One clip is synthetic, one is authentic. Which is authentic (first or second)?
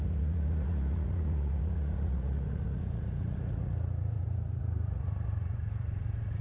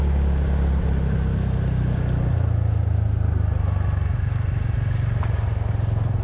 second